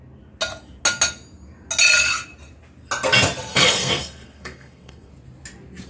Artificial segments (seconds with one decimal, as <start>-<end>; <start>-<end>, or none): 3.5-5.1